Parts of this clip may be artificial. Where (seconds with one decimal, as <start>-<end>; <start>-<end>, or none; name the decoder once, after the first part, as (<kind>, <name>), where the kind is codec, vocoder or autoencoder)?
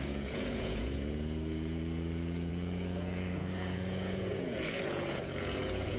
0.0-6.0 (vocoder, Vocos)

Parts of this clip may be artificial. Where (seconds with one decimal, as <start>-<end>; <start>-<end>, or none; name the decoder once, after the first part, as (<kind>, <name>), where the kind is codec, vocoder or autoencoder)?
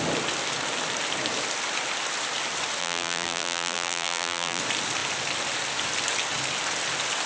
2.8-4.6 (vocoder, BigVGAN v2)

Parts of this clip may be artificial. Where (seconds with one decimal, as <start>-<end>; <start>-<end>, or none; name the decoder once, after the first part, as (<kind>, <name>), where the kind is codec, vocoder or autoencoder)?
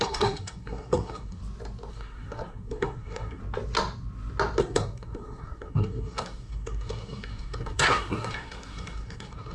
0.0-1.4 (codec, SNAC); 1.9-3.4; 4.6-9.5